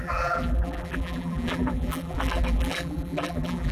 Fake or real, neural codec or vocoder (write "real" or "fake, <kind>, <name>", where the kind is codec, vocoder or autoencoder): fake, vocoder, BigVGAN v2